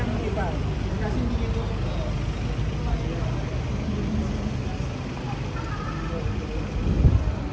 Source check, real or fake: real